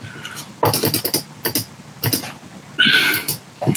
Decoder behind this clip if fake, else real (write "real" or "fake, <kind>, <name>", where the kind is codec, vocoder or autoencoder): real